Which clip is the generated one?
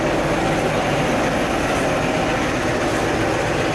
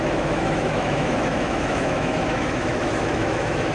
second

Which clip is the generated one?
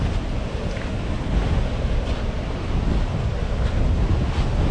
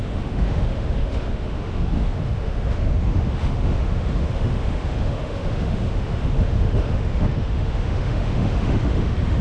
second